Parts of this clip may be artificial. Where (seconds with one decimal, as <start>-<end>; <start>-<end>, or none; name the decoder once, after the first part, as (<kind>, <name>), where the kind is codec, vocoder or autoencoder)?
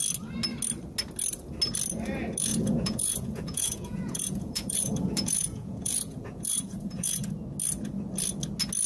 2.5-7.3 (vocoder, Vocos)